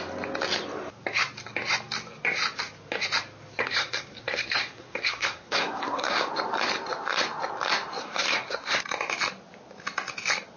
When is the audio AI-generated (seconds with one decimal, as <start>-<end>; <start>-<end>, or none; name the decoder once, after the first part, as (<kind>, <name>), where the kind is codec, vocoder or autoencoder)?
3.6-6.3 (codec, SNAC); 8.0-8.8